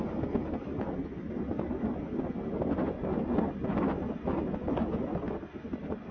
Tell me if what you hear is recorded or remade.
recorded